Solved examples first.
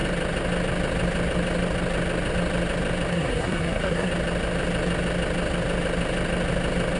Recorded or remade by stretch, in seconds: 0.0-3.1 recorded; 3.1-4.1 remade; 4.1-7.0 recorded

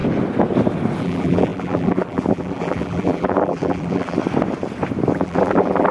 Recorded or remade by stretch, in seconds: 0.0-1.0 recorded; 1.0-4.2 remade; 4.2-5.1 recorded; 5.1-5.9 remade

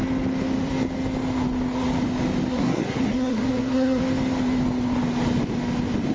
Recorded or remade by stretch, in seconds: 0.0-2.5 recorded; 2.5-4.0 remade; 4.0-6.1 recorded

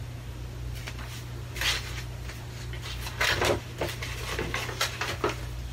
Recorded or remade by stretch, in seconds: 0.0-5.7 recorded

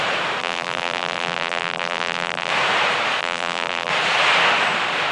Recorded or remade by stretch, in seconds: 0.0-0.4 recorded; 0.4-2.5 remade; 2.5-3.2 recorded; 3.2-3.9 remade; 3.9-5.1 recorded

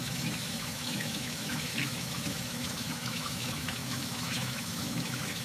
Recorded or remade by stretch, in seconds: 0.0-5.4 remade